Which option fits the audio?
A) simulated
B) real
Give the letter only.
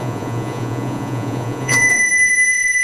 A